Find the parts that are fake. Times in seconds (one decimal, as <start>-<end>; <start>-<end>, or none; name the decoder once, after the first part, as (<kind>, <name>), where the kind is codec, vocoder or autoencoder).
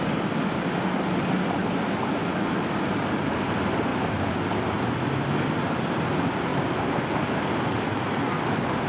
none